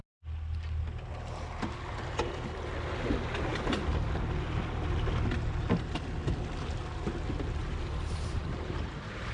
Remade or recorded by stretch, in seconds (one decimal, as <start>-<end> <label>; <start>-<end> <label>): 0.0-7.6 recorded; 7.6-9.3 remade